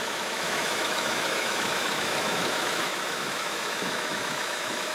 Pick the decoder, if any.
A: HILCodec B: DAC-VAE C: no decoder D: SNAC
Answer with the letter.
B